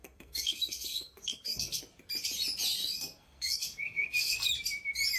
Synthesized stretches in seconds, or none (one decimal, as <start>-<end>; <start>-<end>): 0.0-1.8; 2.8-4.5